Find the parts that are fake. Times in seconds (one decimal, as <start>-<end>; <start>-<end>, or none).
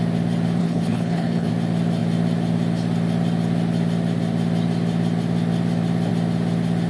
0.6-1.5